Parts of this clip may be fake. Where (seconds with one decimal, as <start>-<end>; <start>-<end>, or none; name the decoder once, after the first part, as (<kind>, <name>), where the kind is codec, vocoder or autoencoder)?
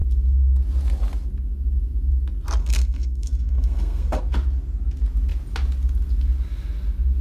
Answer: 2.6-4.2 (codec, SNAC)